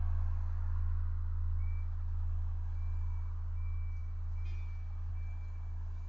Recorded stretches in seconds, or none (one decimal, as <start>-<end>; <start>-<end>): 0.0-6.1